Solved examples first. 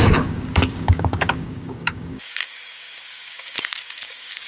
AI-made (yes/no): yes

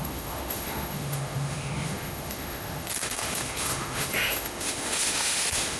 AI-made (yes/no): yes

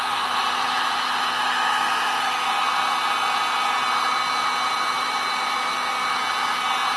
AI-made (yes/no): no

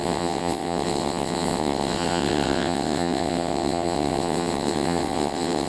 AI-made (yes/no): yes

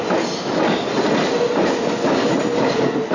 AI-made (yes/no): no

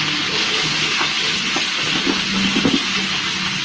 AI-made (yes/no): no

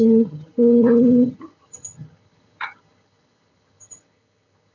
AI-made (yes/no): yes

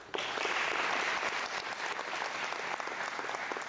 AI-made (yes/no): no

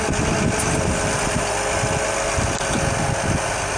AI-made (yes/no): no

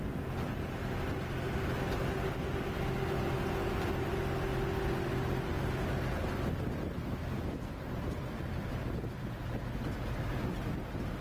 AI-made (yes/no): no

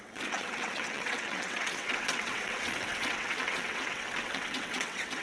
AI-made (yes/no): yes